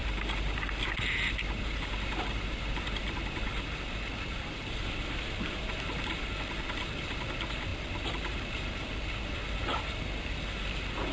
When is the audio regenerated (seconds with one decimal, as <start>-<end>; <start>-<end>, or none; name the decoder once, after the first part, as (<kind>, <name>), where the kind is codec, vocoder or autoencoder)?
none

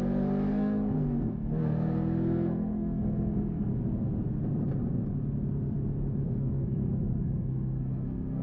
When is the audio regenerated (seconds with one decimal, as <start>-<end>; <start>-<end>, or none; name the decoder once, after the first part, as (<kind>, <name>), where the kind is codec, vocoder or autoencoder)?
0.0-3.7 (codec, SNAC); 6.2-8.4

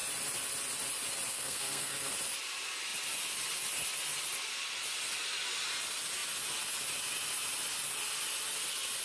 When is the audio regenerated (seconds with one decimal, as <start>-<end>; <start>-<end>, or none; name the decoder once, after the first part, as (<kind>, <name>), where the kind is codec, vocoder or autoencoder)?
1.3-2.0 (codec, SNAC)

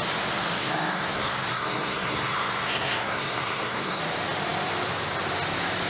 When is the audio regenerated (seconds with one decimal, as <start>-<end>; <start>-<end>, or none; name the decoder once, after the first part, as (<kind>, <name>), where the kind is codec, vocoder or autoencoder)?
0.6-4.0 (codec, SNAC)

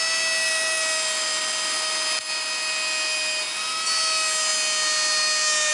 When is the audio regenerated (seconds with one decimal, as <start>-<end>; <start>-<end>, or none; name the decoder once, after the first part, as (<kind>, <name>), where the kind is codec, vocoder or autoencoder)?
none

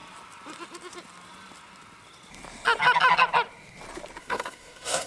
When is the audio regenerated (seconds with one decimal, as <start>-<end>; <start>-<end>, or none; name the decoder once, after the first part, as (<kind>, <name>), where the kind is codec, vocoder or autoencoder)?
4.2-5.1 (codec, SNAC)